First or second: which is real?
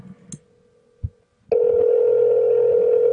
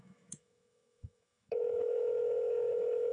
first